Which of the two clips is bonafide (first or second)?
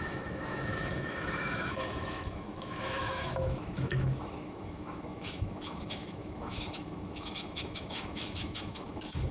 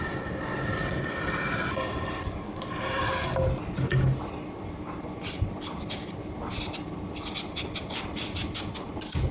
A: second